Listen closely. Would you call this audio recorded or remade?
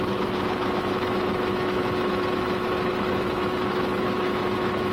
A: remade